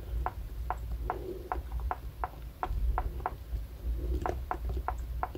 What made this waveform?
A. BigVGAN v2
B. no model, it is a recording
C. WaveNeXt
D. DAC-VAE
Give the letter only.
B